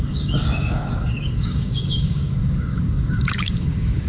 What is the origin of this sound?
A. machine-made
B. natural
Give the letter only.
A